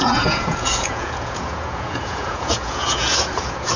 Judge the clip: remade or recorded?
remade